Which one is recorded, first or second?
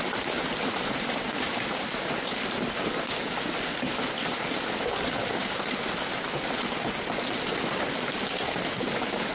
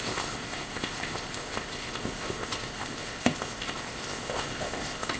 first